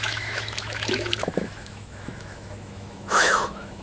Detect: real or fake fake